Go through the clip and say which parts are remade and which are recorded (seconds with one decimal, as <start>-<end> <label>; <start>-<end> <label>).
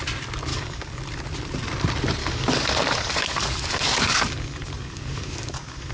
0.0-0.5 recorded; 0.5-1.0 remade; 1.0-2.2 recorded; 2.2-5.9 remade